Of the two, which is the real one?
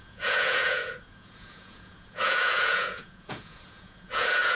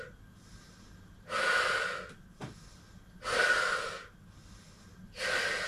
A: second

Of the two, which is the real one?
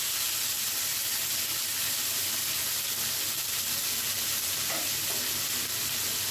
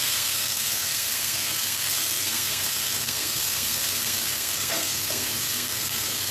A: first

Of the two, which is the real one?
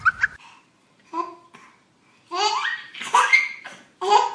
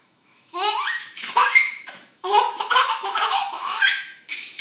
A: first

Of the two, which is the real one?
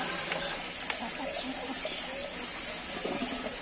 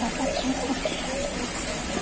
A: first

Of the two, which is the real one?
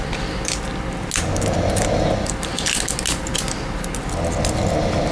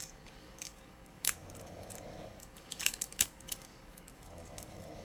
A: first